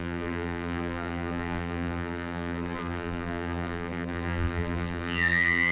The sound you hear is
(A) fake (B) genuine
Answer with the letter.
A